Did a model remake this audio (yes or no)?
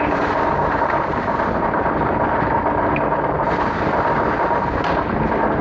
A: yes